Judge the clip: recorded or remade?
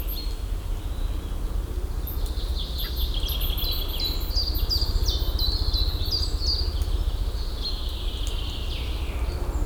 recorded